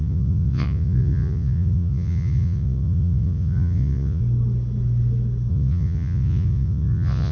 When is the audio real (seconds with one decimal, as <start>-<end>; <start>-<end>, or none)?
4.2-5.5